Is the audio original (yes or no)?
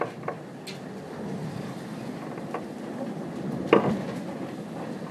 yes